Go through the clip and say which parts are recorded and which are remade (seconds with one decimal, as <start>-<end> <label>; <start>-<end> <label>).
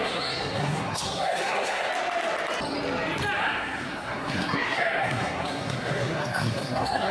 0.0-1.9 remade; 1.9-3.4 recorded; 3.4-7.1 remade